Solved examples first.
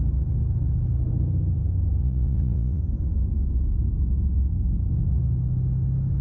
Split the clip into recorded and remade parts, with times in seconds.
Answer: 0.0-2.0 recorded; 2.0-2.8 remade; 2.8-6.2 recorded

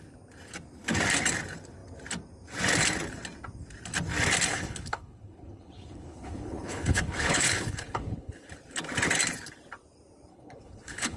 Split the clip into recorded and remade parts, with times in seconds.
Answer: 0.0-4.5 recorded; 4.5-8.5 remade; 8.5-10.3 recorded; 10.3-11.2 remade

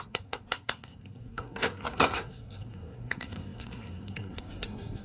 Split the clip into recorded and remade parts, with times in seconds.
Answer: 0.0-5.0 remade

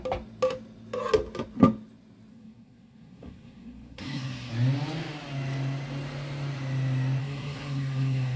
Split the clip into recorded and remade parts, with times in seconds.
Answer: 0.0-2.3 recorded; 2.3-4.5 remade; 4.5-7.2 recorded; 7.2-8.4 remade